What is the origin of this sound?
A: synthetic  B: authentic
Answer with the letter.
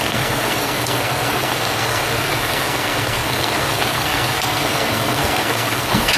A